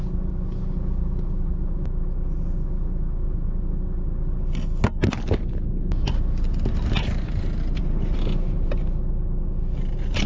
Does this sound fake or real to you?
real